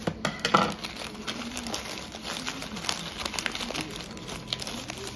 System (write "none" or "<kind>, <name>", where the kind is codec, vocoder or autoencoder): none